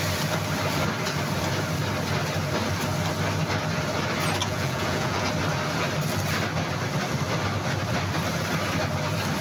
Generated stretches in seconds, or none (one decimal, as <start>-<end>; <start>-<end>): 4.4-5.3